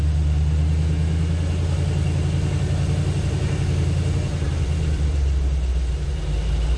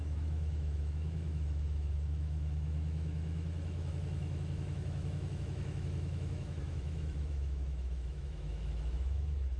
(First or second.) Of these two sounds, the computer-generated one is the second